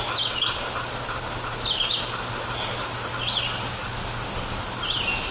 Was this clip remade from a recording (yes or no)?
no